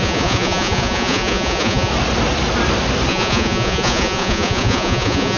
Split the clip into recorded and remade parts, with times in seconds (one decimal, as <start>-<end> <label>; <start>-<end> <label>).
0.0-1.9 remade; 1.9-3.1 recorded; 3.1-5.4 remade

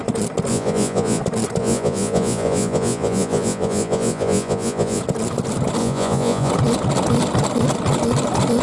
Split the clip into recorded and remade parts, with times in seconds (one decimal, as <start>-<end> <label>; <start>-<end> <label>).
0.0-0.5 recorded; 0.5-1.2 remade; 1.2-1.6 recorded; 1.6-5.0 remade; 5.0-5.8 recorded; 5.8-6.5 remade; 6.5-8.6 recorded

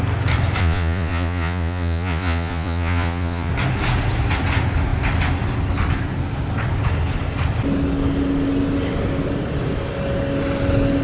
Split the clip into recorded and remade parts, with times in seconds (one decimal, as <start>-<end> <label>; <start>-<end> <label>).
0.0-0.6 recorded; 0.6-3.5 remade; 3.5-11.0 recorded

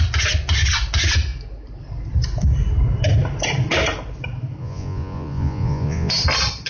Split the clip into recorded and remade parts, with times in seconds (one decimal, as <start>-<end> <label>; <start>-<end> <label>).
0.0-4.6 recorded; 4.6-6.1 remade; 6.1-6.7 recorded

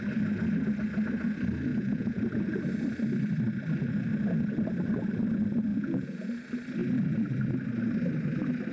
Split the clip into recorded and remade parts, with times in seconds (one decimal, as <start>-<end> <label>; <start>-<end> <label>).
0.0-1.7 recorded; 1.7-2.2 remade; 2.2-5.7 recorded; 5.7-6.3 remade; 6.3-8.7 recorded

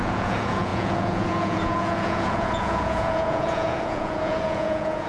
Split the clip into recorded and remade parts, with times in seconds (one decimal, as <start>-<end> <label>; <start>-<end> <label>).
0.0-5.1 remade